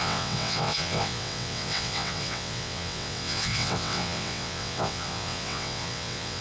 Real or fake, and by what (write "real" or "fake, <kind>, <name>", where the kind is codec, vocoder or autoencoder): fake, vocoder, WaveNeXt